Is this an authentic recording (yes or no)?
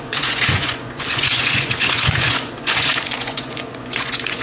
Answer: no